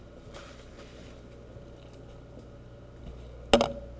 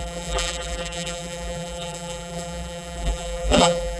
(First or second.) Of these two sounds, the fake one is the second